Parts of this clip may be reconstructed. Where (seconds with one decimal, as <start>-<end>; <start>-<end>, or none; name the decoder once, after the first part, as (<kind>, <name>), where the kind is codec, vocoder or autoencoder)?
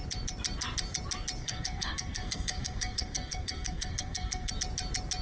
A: 1.4-4.5 (codec, SNAC)